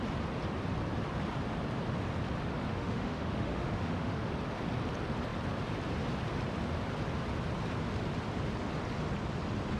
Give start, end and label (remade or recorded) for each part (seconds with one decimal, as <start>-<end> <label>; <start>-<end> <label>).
0.0-2.7 recorded; 2.7-4.3 remade; 4.3-9.8 recorded